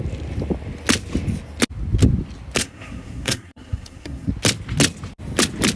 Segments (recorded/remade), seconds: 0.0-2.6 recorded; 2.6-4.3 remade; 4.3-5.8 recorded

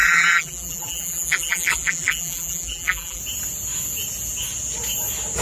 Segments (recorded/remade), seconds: 0.0-3.2 remade; 3.2-5.4 recorded

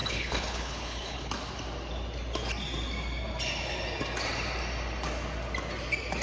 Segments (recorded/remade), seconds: 0.0-1.3 remade; 1.3-6.2 recorded

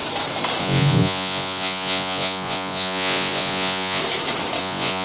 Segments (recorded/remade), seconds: 0.0-0.6 recorded; 0.6-4.0 remade; 4.0-4.6 recorded; 4.6-5.0 remade

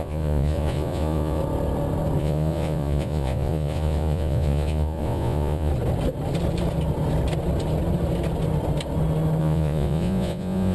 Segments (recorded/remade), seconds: 0.0-1.4 remade; 1.4-2.2 recorded; 2.2-5.7 remade; 5.7-9.4 recorded; 9.4-10.7 remade

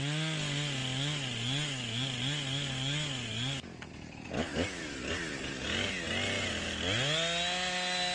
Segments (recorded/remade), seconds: 0.0-8.1 recorded

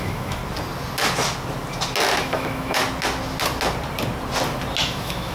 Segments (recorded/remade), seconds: 0.0-0.4 remade; 0.4-2.2 recorded; 2.2-2.8 remade; 2.8-4.8 recorded; 4.8-5.3 remade